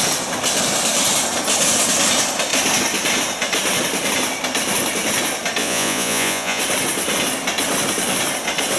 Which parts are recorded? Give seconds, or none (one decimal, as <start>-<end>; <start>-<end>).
0.0-5.6; 6.6-8.8